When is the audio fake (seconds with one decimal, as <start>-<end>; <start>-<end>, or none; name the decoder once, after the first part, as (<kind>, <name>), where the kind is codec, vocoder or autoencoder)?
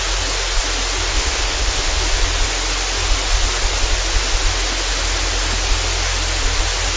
1.1-2.0 (codec, HILCodec)